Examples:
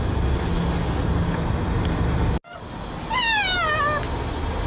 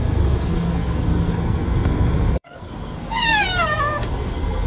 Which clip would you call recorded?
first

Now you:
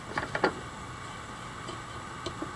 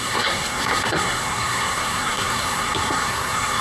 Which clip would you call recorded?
first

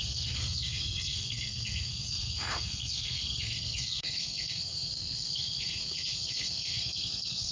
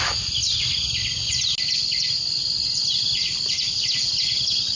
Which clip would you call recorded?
second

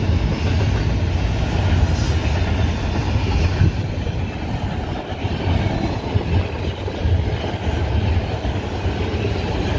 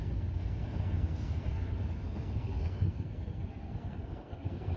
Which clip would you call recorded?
first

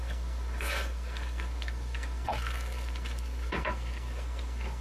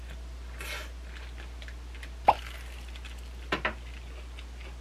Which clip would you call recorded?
second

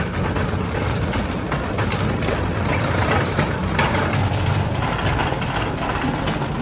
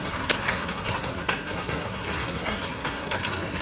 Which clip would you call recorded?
first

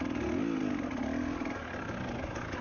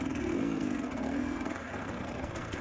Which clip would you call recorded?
first